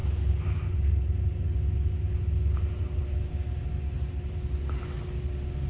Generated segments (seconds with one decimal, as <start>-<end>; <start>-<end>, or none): none